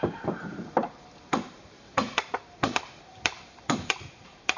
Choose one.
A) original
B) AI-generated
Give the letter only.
B